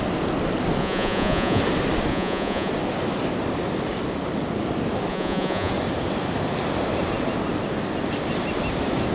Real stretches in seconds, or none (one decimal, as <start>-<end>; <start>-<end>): 0.0-0.8; 1.6-2.1; 2.7-5.1; 5.7-9.1